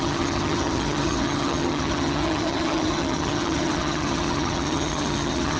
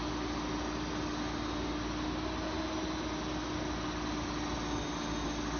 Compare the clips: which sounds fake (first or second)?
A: first